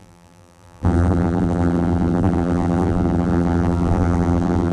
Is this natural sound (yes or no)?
no